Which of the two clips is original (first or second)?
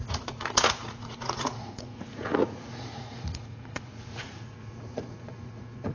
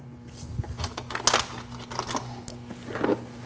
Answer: second